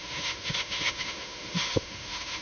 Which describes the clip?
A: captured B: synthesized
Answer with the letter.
B